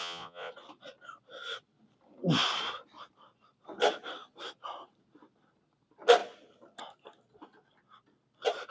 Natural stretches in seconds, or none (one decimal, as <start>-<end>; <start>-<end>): 0.5-8.7